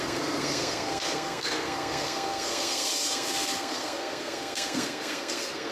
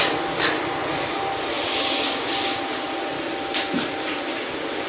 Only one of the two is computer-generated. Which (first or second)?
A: first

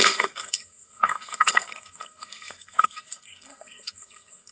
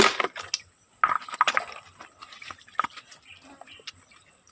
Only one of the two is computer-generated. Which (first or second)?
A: first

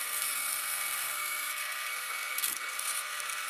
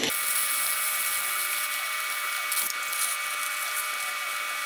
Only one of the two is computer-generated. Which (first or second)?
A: first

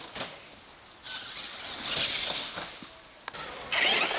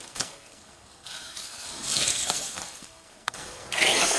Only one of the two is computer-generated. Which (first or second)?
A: second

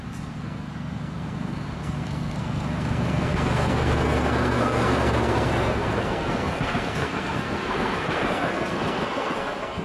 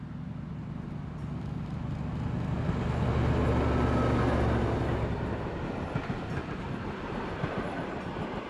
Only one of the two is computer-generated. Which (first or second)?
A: first